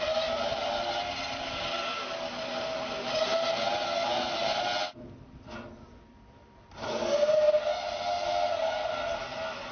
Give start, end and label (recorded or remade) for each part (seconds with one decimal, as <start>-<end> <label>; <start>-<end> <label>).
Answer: 0.0-9.7 recorded